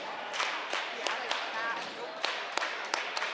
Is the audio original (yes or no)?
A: yes